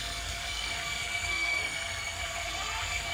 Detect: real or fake fake